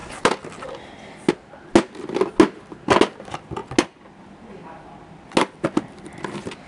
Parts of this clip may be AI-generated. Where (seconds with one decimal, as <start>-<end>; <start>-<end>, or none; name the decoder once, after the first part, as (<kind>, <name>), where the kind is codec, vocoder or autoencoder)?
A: none